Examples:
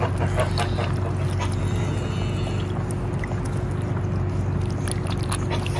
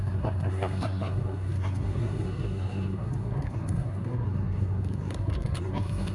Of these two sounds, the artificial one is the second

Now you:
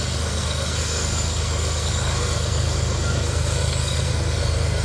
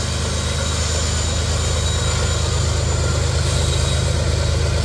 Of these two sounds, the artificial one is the first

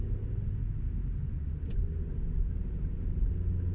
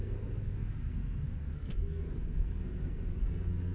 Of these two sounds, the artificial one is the second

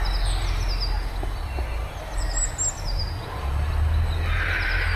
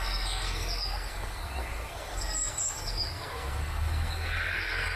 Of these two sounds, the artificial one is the second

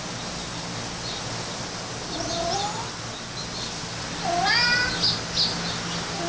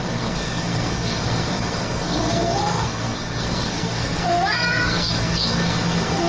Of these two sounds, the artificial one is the second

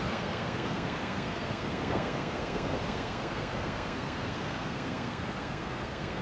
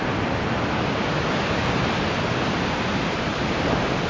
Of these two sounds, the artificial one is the first